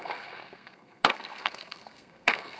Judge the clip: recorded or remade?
remade